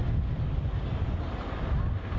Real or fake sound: real